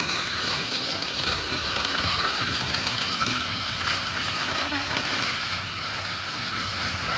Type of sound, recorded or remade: remade